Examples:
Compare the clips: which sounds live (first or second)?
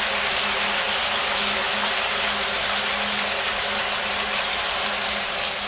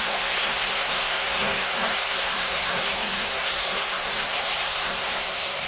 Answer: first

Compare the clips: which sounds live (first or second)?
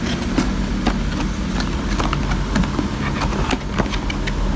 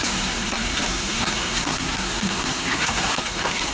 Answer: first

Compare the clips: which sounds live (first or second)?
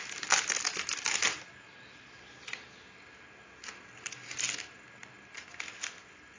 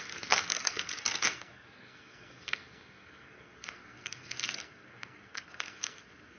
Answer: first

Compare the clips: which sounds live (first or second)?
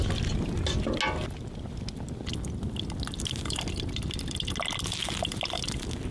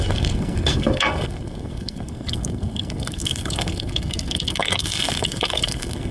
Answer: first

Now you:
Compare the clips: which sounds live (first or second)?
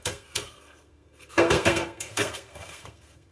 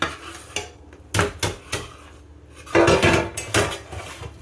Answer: second